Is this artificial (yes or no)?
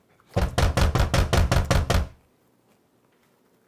no